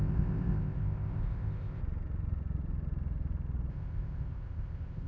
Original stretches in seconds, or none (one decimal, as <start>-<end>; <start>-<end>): 1.8-3.7